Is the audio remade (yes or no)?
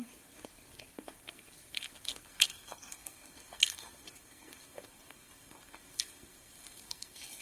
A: yes